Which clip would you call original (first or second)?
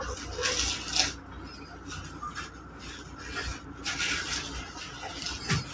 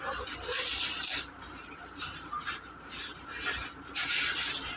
first